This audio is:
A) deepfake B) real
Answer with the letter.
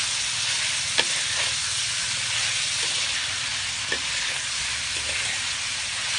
B